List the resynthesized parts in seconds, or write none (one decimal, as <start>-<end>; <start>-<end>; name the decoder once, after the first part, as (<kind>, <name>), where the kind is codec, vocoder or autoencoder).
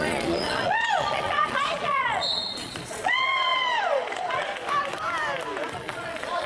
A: 0.0-4.6 (vocoder, Vocos); 5.7-6.5